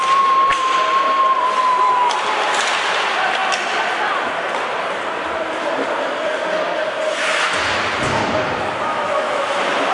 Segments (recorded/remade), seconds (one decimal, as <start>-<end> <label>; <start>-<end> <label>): 0.0-8.9 recorded; 8.9-9.4 remade; 9.4-9.9 recorded